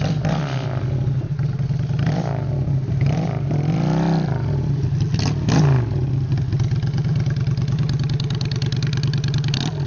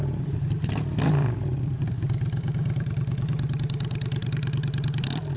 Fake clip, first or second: second